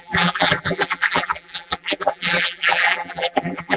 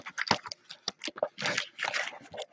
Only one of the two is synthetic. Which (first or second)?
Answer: first